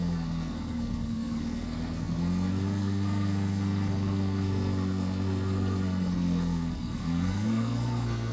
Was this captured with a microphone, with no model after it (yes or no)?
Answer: no